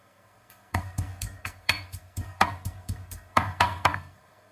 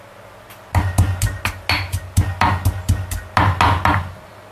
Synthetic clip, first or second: first